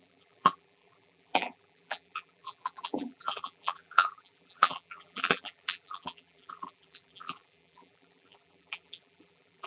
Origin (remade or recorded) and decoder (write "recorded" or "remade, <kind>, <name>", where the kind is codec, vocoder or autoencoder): remade, vocoder, BigVGAN v2